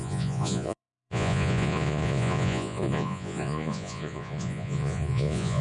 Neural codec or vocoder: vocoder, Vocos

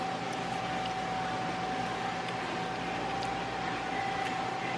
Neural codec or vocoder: none